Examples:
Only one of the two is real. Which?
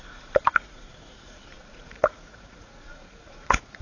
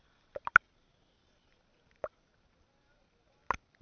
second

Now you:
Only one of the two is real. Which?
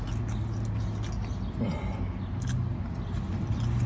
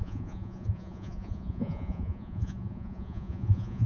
first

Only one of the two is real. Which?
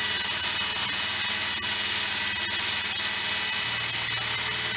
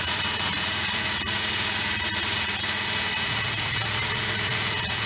first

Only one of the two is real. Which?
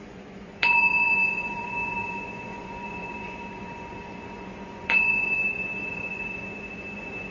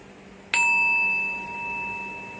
second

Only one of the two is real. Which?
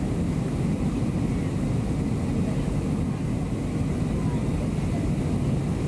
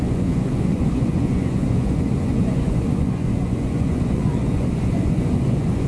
first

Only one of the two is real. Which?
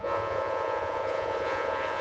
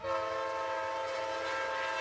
second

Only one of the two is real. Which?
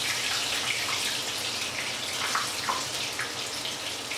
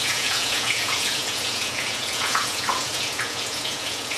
first